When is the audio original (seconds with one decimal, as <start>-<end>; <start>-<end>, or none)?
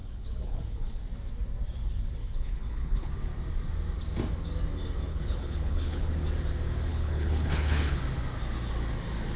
1.0-2.2; 3.1-5.1; 6.1-6.9; 8.0-9.4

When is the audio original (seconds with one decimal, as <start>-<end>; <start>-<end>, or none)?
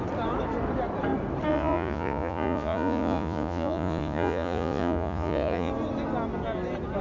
0.0-1.5; 5.7-7.0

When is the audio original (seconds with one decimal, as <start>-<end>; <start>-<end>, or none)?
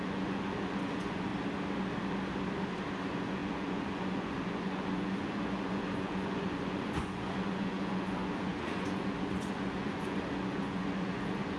1.3-3.0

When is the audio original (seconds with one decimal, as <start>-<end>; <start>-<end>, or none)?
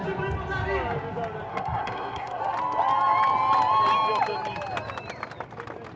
0.0-1.5; 2.4-6.0